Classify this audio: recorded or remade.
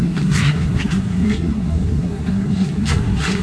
remade